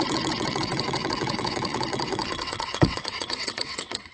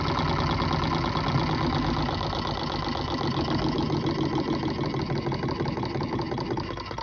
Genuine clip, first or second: second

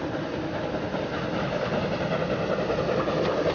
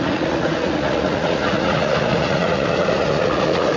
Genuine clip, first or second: first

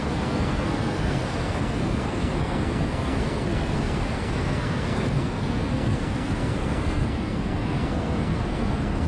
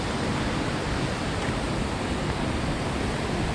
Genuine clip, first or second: second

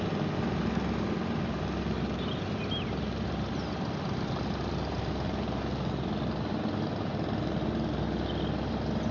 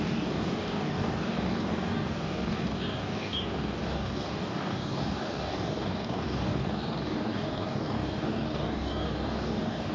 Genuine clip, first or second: first